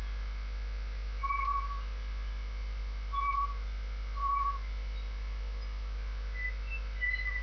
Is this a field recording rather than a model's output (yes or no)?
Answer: yes